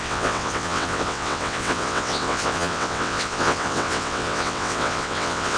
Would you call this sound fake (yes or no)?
yes